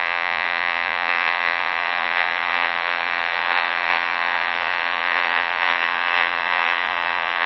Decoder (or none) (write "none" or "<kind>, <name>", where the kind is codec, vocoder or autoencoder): vocoder, Vocos